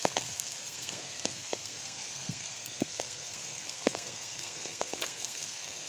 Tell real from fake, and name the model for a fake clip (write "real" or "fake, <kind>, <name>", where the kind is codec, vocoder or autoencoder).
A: fake, codec, SNAC